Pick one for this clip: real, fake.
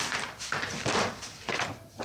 fake